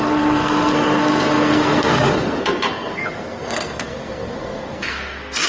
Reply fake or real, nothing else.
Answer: fake